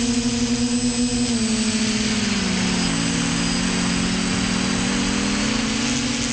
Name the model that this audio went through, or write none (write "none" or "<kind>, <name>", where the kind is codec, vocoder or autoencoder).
none